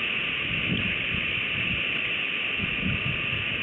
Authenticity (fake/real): real